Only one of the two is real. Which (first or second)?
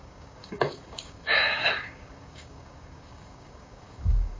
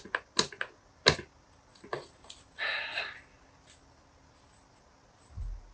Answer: second